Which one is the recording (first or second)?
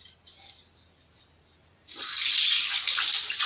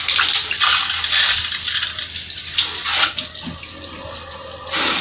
second